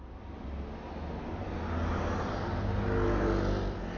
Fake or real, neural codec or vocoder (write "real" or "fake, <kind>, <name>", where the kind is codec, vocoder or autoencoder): real